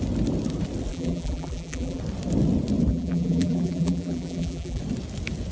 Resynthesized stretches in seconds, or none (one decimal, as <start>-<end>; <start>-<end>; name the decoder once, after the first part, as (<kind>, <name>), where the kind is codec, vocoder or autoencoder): 0.9-2.0 (vocoder, BigVGAN v2); 2.9-4.8